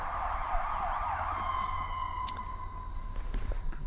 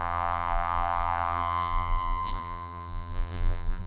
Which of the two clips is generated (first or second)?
second